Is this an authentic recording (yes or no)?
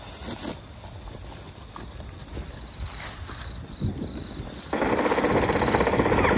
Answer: yes